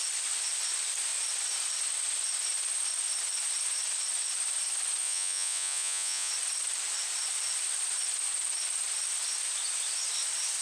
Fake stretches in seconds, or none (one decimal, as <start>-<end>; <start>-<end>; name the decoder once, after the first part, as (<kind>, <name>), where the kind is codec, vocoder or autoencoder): 5.0-6.3 (vocoder, Vocos)